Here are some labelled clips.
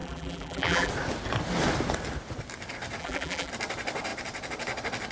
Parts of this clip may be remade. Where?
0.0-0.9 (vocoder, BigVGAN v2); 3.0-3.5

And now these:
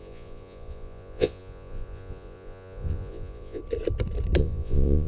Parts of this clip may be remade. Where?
0.0-3.6 (vocoder, Vocos); 4.4-5.1

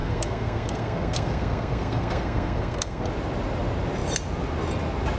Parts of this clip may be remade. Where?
0.0-3.1 (codec, SNAC)

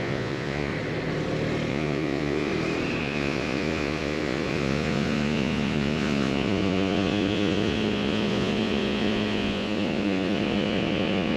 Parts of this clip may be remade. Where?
0.0-0.7 (vocoder, Vocos); 1.7-2.5; 3.0-11.4

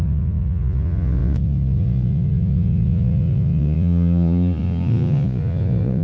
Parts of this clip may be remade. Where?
0.0-6.0 (vocoder, Vocos)